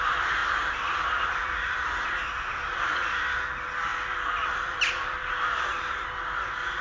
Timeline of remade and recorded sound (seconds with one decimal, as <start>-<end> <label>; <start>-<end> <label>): 0.0-0.4 recorded; 0.4-2.8 remade; 2.8-3.9 recorded; 3.9-5.3 remade; 5.3-6.8 recorded